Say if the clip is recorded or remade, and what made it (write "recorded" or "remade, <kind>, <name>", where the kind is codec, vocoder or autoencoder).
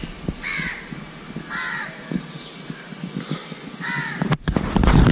recorded